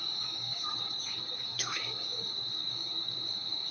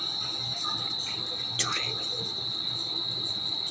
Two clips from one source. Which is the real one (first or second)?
second